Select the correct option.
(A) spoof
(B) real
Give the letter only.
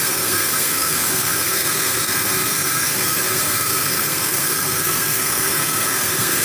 A